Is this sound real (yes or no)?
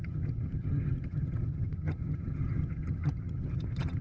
no